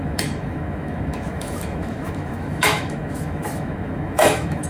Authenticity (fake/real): fake